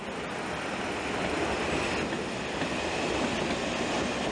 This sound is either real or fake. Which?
real